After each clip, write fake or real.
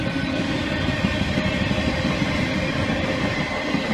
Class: real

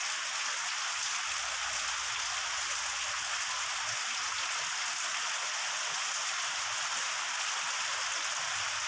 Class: real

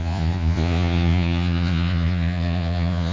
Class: fake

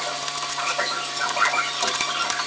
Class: real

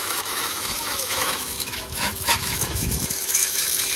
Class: fake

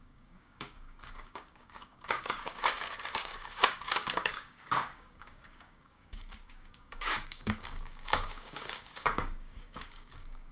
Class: fake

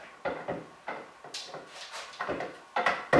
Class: real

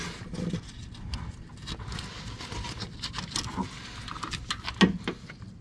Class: real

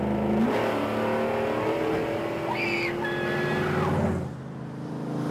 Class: real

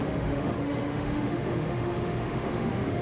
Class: fake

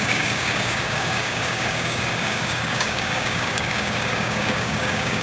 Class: fake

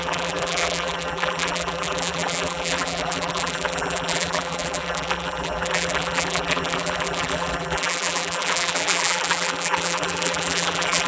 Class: fake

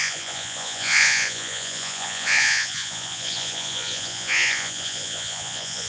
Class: fake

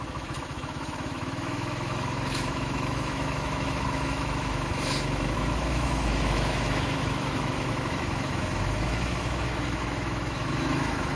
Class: fake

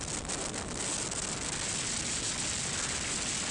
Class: real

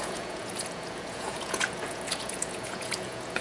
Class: fake